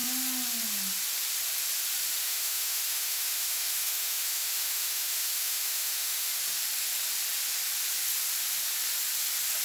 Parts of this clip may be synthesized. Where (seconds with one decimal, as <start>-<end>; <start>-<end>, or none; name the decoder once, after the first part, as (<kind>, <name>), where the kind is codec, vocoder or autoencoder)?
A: 2.2-6.3 (autoencoder, DAC-VAE)